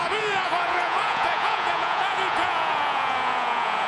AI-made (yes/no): yes